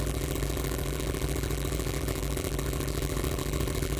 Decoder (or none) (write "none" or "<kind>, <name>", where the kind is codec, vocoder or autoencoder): vocoder, BigVGAN v2